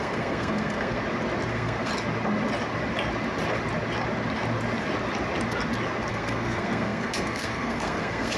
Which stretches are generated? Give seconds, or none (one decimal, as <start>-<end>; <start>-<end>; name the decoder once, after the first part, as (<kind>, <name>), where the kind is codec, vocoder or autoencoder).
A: 0.0-1.0 (codec, SNAC); 1.5-1.9; 6.1-8.4